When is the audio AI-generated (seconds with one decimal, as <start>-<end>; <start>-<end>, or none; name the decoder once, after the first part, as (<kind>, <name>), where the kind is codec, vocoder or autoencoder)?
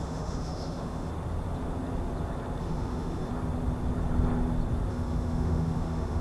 0.0-1.1 (autoencoder, DAC-VAE); 2.6-3.3; 4.9-6.2